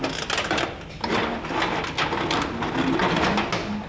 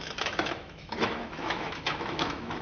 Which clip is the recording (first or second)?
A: first